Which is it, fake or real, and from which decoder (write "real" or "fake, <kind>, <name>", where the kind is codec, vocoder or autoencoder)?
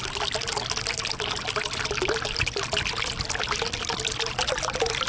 real